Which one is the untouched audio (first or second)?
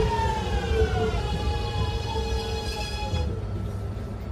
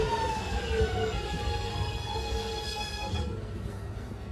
first